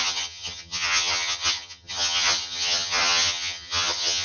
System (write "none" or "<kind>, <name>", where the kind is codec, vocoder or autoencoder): vocoder, HiFi-GAN